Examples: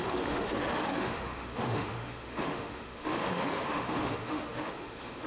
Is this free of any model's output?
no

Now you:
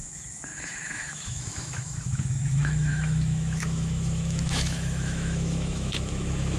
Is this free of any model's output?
no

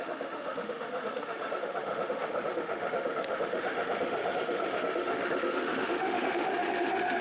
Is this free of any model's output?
no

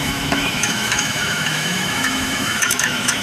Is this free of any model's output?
no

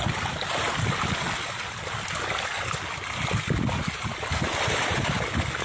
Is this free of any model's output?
yes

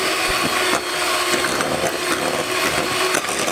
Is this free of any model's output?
yes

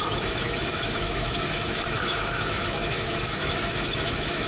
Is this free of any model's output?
no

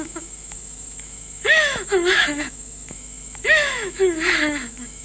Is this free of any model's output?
no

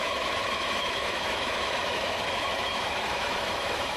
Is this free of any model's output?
no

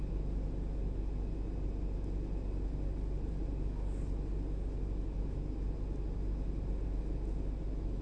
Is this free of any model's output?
yes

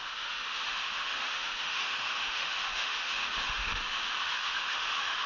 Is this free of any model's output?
no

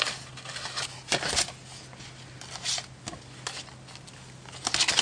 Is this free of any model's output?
yes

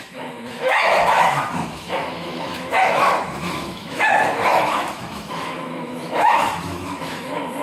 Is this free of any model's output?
no